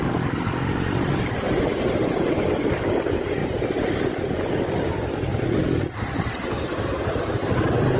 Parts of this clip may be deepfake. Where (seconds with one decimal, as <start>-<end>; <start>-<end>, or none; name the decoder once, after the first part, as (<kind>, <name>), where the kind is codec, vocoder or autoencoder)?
3.4-4.0 (vocoder, BigVGAN v2)

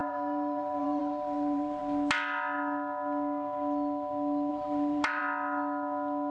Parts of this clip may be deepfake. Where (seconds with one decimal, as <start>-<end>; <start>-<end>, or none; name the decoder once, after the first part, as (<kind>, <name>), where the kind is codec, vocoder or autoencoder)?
0.0-1.8 (vocoder, BigVGAN v2); 4.5-5.2

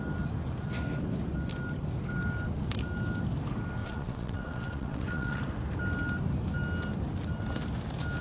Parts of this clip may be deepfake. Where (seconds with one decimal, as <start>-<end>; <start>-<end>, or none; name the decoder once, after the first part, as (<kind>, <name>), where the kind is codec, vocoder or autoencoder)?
3.8-5.4 (vocoder, WaveNeXt)

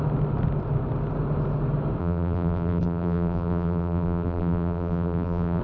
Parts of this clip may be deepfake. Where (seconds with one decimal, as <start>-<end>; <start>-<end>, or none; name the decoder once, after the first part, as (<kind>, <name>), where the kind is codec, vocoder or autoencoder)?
2.0-5.6 (vocoder, BigVGAN v2)